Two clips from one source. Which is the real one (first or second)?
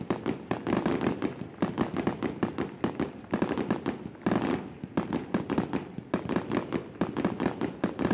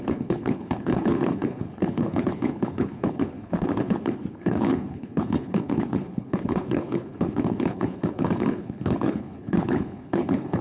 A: first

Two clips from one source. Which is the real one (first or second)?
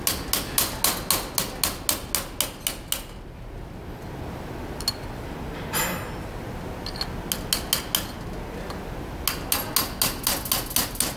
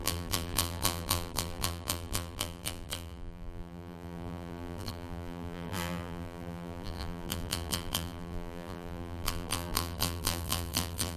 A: first